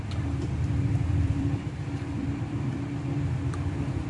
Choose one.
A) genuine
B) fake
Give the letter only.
B